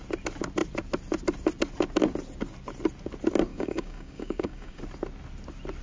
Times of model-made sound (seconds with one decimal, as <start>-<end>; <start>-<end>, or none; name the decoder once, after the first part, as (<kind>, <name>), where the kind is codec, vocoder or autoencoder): 3.5-4.8 (codec, DAC)